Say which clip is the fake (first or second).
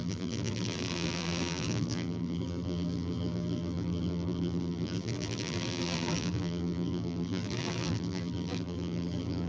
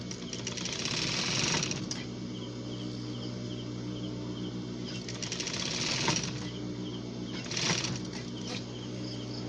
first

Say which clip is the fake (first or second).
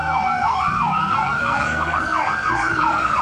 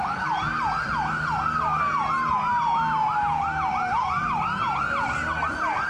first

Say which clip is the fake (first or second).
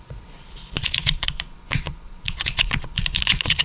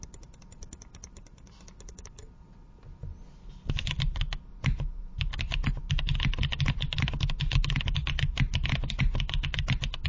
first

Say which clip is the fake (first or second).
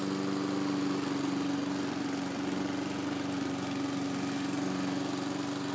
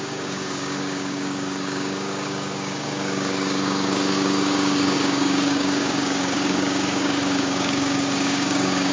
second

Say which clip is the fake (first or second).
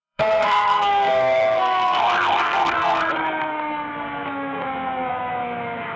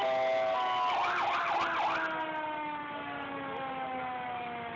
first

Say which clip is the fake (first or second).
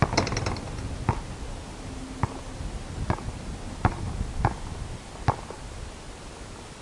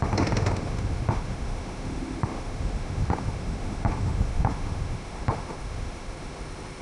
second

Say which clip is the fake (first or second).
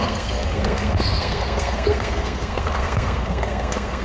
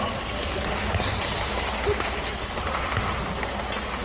first